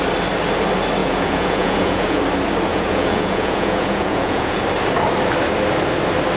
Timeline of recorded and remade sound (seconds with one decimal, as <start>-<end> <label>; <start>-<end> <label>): 0.0-1.0 recorded; 1.0-2.2 remade; 2.2-2.7 recorded; 2.7-4.6 remade; 4.6-6.4 recorded